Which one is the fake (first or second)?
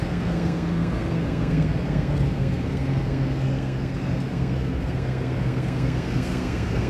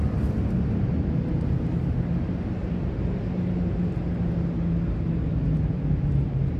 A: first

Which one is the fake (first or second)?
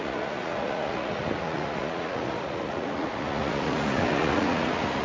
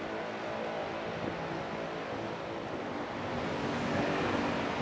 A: first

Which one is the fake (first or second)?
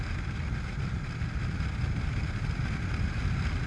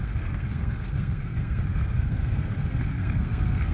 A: second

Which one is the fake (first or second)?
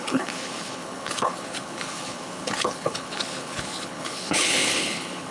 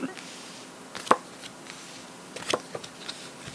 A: first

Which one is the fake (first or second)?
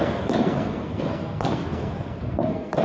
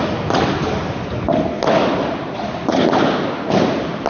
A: first